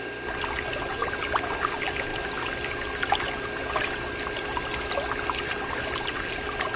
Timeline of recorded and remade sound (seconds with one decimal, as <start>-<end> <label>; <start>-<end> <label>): 0.0-6.8 recorded